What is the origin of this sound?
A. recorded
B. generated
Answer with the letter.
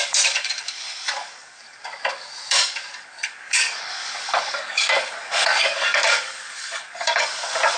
B